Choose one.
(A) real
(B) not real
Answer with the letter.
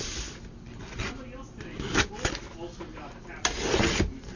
A